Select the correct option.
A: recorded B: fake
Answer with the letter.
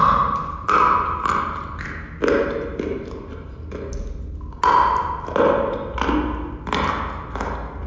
A